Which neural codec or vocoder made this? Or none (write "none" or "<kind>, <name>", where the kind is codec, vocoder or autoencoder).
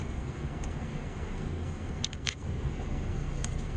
codec, SNAC